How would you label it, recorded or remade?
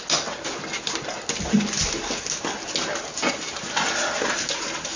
recorded